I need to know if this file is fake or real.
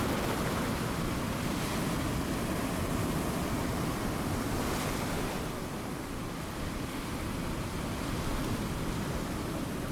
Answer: real